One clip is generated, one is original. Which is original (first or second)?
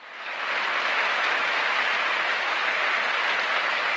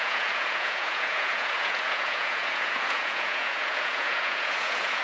first